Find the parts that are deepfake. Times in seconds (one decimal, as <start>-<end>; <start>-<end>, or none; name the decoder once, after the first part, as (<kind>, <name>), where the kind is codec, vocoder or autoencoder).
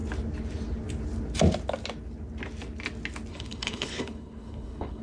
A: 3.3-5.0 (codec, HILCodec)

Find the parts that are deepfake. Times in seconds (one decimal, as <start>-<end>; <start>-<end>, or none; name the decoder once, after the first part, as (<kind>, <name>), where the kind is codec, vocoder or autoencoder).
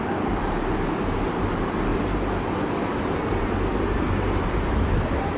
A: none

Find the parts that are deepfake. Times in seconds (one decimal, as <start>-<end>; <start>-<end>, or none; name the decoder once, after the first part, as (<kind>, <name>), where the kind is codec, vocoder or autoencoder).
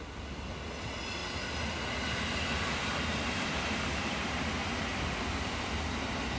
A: none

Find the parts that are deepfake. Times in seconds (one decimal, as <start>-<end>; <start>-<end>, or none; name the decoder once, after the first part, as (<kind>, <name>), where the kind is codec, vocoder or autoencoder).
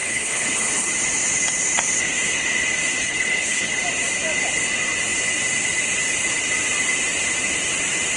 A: 0.0-0.9 (codec, HILCodec); 3.0-3.7